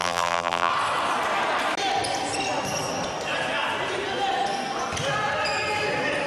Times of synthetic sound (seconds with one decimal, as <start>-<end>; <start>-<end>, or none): 0.0-0.7